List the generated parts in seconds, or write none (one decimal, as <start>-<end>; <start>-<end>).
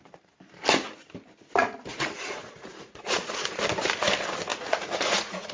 1.9-3.6; 4.5-5.5